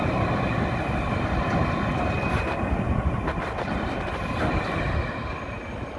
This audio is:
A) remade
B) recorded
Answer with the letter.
B